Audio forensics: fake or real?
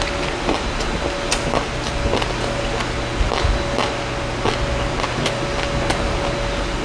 real